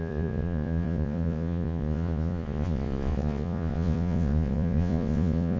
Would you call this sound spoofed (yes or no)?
yes